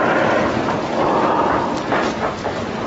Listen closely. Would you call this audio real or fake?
real